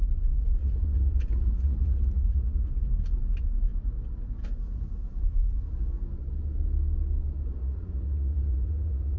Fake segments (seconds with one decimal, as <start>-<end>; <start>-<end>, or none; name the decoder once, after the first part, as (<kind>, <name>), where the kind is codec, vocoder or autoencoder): 0.6-2.7 (vocoder, Vocos); 7.6-9.2